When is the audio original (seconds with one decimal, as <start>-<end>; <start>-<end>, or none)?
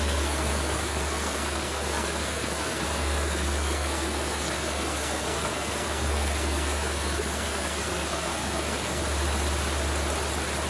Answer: 9.0-10.7